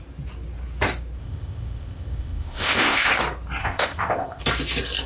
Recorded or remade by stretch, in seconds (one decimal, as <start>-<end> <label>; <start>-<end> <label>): 0.0-1.2 recorded; 1.2-3.1 remade; 3.1-3.6 recorded; 3.6-4.4 remade; 4.4-5.1 recorded